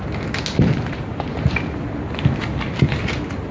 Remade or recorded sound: recorded